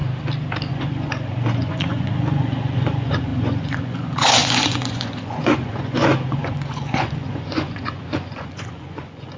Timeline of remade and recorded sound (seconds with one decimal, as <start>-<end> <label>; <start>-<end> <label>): 0.0-0.7 recorded; 0.7-9.4 remade